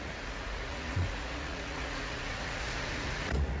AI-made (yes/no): yes